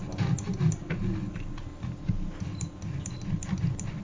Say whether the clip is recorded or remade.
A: recorded